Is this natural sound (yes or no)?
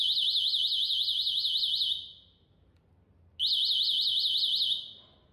yes